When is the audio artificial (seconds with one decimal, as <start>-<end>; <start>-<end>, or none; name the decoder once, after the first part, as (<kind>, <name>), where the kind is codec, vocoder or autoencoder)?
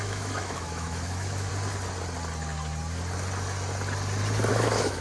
0.0-1.5 (autoencoder, DAC-VAE); 4.5-5.0